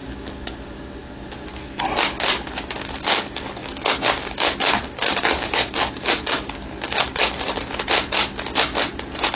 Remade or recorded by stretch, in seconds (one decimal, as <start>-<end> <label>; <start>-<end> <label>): 0.0-1.8 remade; 1.8-2.8 recorded; 2.8-7.6 remade; 7.6-9.4 recorded